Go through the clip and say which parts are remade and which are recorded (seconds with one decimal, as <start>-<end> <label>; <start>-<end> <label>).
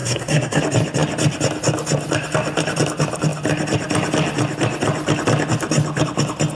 0.0-0.6 remade; 0.6-6.5 recorded